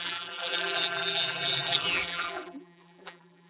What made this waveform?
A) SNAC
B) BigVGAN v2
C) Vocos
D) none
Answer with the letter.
B